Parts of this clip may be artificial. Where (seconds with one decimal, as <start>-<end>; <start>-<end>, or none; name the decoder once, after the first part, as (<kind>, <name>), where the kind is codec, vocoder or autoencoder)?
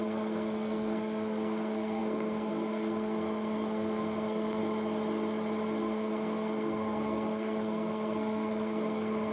0.0-4.6 (codec, SNAC); 5.8-9.3